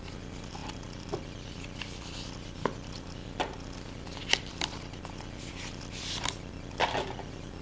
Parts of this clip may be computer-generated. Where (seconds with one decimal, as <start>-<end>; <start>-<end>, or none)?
none